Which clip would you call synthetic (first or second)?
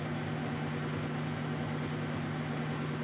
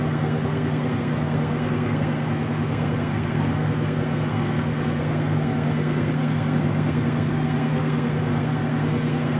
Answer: second